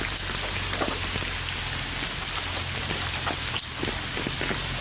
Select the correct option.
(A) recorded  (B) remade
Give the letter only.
A